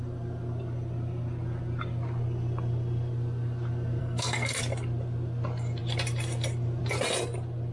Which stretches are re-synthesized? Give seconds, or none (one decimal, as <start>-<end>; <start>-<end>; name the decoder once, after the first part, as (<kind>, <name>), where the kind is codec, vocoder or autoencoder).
4.0-4.6 (codec, SNAC)